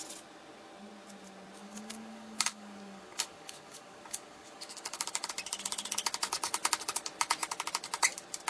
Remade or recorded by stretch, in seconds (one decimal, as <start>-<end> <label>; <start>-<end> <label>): 0.0-1.6 recorded; 1.6-5.3 remade; 5.3-8.5 recorded